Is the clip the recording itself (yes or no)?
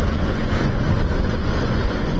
no